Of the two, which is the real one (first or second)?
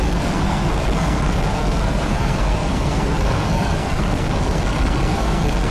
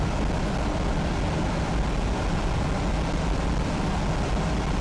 second